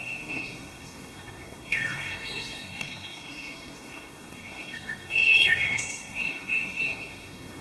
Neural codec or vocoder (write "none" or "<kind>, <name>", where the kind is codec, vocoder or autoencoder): codec, SNAC